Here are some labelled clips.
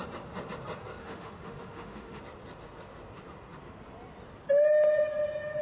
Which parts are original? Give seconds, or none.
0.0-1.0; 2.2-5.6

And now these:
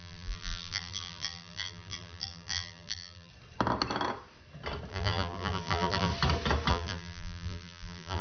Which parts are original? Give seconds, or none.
3.3-4.9; 6.1-6.7

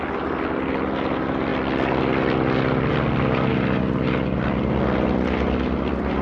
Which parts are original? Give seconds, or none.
0.0-6.2